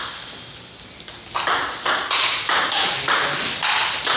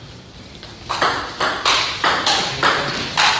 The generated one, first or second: second